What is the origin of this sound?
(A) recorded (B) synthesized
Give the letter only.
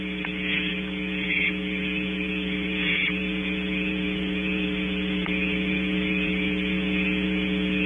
B